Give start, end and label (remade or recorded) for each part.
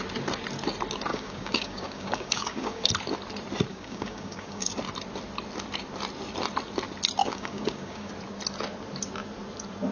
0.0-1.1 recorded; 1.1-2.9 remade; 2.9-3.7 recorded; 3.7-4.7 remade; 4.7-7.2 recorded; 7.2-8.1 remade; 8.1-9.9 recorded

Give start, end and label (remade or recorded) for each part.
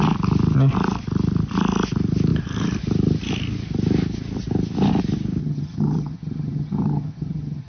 0.0-5.4 recorded; 5.4-7.7 remade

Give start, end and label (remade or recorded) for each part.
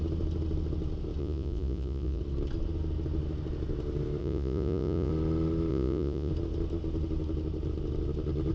0.0-1.2 recorded; 1.2-2.2 remade; 2.2-4.2 recorded; 4.2-5.1 remade; 5.1-5.7 recorded; 5.7-6.3 remade; 6.3-8.5 recorded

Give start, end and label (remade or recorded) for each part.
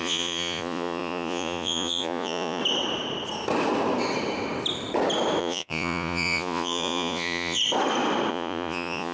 0.0-2.6 remade; 2.6-5.4 recorded; 5.4-7.6 remade; 7.6-8.3 recorded; 8.3-9.1 remade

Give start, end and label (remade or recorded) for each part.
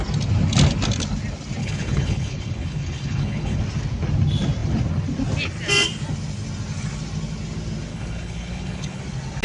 0.0-1.6 recorded; 1.6-3.6 remade; 3.6-7.9 recorded; 7.9-9.0 remade; 9.0-9.4 recorded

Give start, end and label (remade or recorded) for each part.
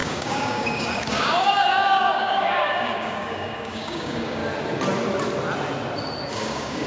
0.0-4.4 remade; 4.4-6.3 recorded; 6.3-6.9 remade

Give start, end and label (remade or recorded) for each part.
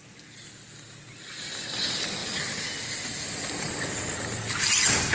0.0-5.1 recorded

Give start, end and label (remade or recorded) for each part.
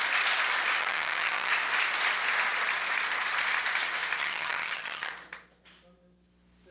0.0-0.8 recorded; 0.8-1.5 remade; 1.5-4.2 recorded; 4.2-5.1 remade; 5.1-6.7 recorded